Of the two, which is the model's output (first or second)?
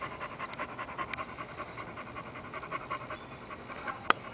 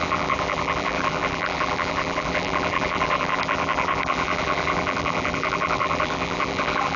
second